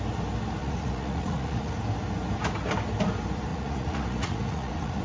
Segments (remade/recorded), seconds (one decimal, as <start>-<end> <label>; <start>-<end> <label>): 0.0-0.6 recorded; 0.6-1.8 remade; 1.8-3.5 recorded; 3.5-5.0 remade